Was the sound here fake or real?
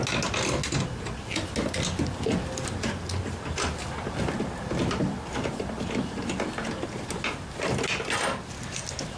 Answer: real